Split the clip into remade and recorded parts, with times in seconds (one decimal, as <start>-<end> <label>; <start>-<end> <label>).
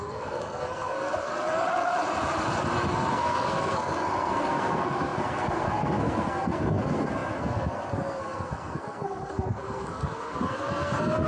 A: 0.0-1.3 remade; 1.3-3.1 recorded; 3.1-11.3 remade